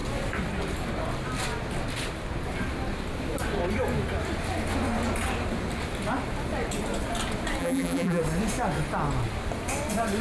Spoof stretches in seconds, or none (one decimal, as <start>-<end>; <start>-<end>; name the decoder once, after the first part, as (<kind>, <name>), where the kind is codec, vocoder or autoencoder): 7.6-8.2 (vocoder, BigVGAN v2)